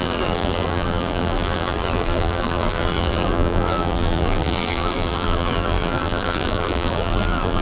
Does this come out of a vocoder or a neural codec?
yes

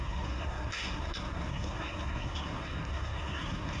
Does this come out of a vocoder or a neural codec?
yes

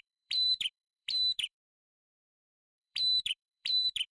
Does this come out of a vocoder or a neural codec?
yes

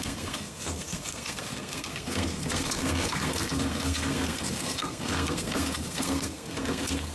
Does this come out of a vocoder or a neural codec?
yes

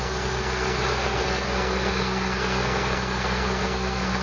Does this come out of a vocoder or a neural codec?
yes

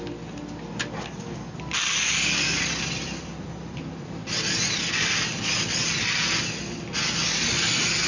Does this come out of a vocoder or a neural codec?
no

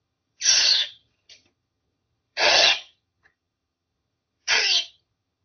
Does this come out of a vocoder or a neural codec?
yes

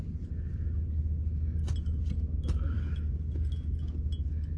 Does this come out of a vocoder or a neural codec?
no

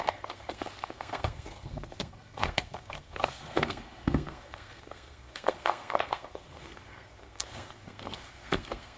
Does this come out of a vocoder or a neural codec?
yes